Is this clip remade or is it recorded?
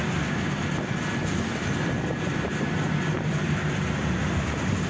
recorded